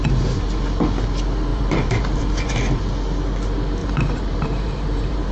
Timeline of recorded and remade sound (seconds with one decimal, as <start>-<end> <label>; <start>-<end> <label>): 0.0-1.5 recorded; 1.5-2.8 remade; 2.8-3.8 recorded; 3.8-5.3 remade